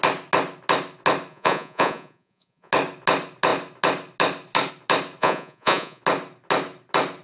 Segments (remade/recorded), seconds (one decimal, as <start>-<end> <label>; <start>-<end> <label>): 0.0-1.3 recorded; 1.3-2.7 remade; 2.7-5.2 recorded; 5.2-6.0 remade; 6.0-7.2 recorded